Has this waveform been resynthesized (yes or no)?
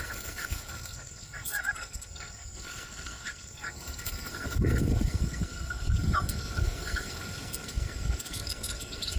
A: yes